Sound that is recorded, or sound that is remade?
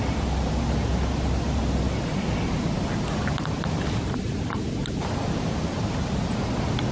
recorded